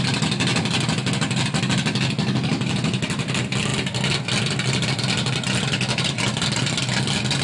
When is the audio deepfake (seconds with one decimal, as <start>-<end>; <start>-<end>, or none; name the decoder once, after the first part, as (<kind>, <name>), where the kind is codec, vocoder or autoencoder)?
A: none

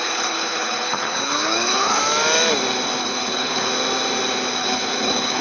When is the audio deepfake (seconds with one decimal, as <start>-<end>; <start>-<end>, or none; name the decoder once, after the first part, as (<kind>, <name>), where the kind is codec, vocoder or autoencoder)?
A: 0.0-2.0 (codec, HILCodec); 3.0-3.7; 4.6-5.4

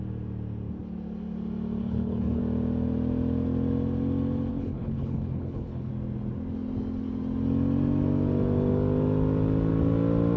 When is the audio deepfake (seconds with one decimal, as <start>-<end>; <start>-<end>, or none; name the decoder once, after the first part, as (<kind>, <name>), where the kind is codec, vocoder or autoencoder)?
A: 1.8-2.4 (codec, HILCodec); 4.5-5.9